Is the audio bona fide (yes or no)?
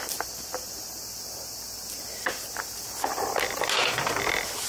yes